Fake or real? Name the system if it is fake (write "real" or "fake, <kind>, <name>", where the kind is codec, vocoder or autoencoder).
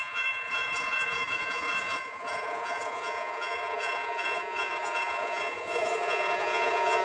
fake, vocoder, Vocos